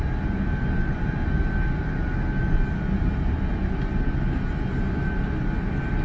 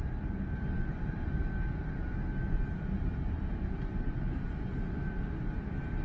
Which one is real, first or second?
first